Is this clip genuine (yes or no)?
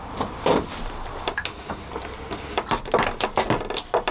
yes